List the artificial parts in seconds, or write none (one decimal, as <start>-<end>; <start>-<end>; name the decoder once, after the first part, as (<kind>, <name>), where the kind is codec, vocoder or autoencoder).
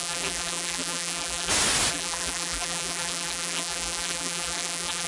0.0-1.5 (vocoder, BigVGAN v2); 1.9-5.1